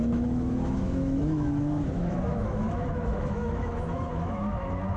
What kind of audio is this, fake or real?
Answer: fake